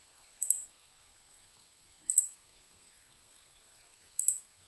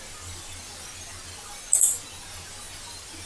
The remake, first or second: first